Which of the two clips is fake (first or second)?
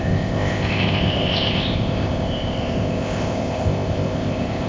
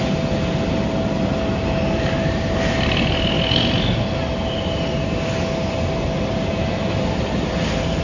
first